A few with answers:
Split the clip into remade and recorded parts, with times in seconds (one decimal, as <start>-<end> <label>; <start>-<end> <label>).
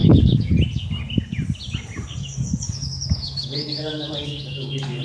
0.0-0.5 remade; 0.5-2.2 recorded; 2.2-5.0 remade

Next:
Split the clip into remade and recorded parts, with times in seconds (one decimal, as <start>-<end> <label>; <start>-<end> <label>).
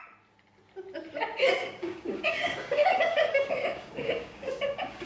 0.0-1.6 recorded; 1.6-5.1 remade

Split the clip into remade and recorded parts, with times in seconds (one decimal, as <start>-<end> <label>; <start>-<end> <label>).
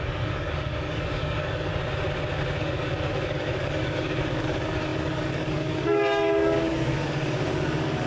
0.0-1.7 remade; 1.7-2.6 recorded; 2.6-8.1 remade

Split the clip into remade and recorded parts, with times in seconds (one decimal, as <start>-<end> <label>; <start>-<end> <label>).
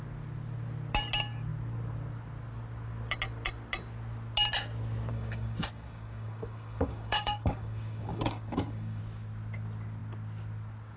0.0-5.1 recorded; 5.1-9.0 remade; 9.0-11.0 recorded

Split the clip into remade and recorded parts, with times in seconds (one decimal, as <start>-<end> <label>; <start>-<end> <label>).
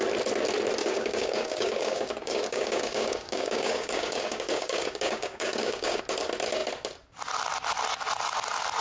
0.0-0.8 recorded; 0.8-6.0 remade; 6.0-8.8 recorded